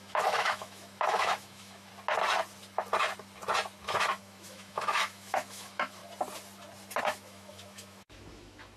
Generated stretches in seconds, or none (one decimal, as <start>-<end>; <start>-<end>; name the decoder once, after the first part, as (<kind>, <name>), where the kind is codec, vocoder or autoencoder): 0.0-1.9 (autoencoder, DAC-VAE); 3.8-6.0; 7.0-8.8